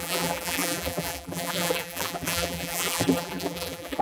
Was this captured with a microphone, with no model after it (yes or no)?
no